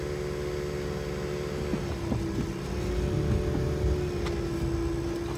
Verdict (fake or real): real